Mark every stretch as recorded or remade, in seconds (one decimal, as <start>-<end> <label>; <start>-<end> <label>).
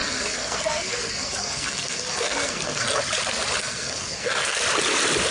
0.0-3.0 remade; 3.0-3.6 recorded; 3.6-4.6 remade; 4.6-5.3 recorded